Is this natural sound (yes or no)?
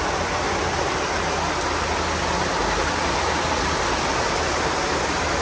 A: yes